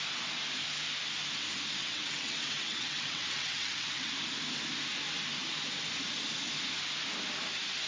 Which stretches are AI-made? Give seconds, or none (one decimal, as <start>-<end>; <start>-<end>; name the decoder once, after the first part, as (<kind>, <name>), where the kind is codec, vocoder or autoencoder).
1.8-4.1 (vocoder, WaveNeXt)